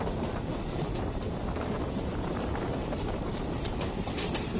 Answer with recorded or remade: remade